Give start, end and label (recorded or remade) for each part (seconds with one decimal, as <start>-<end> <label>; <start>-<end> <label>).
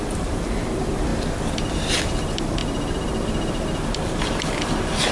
0.0-1.1 remade; 1.1-1.7 recorded; 1.7-5.1 remade